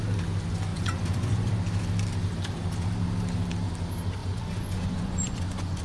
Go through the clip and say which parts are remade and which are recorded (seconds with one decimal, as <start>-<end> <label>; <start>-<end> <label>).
0.0-0.7 recorded; 0.7-1.5 remade; 1.5-4.2 recorded; 4.2-5.8 remade